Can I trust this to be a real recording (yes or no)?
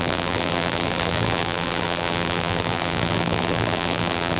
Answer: no